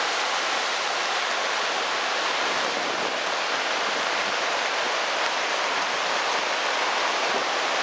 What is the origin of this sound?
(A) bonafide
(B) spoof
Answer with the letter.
A